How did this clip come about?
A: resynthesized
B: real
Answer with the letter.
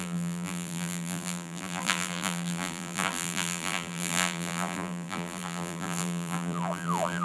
A